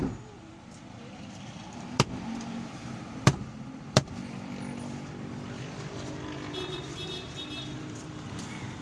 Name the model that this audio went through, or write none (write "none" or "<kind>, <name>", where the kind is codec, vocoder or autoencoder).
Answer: vocoder, BigVGAN v2